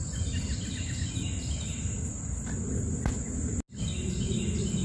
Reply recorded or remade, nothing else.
recorded